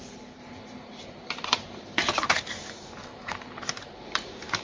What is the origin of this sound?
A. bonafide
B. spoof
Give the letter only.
B